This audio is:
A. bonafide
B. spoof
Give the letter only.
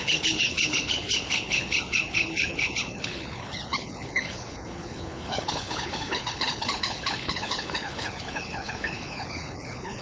B